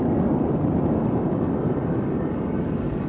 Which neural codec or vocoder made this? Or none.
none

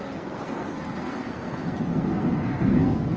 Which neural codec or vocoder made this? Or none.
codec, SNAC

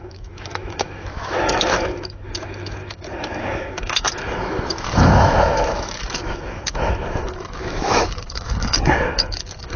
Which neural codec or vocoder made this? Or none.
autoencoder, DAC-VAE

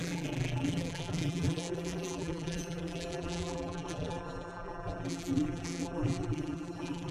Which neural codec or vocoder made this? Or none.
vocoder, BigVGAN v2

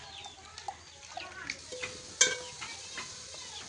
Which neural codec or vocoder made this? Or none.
none